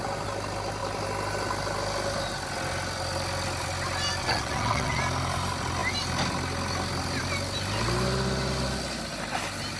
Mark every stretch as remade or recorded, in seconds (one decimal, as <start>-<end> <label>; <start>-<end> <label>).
0.0-4.2 recorded; 4.2-5.0 remade; 5.0-9.8 recorded